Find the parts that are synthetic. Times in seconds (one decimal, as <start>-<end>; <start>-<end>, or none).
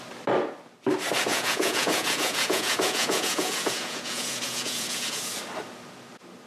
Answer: 1.3-5.2